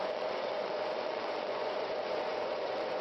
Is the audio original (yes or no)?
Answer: no